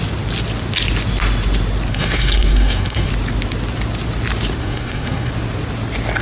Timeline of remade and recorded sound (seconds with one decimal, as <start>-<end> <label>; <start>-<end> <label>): 0.0-1.9 recorded; 1.9-3.1 remade; 3.1-4.6 recorded; 4.6-5.3 remade; 5.3-6.2 recorded